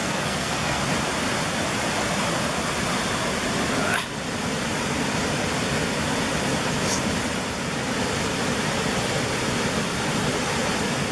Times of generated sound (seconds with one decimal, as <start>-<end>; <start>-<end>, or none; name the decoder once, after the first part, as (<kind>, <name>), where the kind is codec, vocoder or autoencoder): 0.0-0.8 (codec, SNAC)